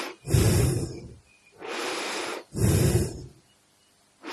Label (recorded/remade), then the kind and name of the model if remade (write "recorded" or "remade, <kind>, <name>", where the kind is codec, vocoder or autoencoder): recorded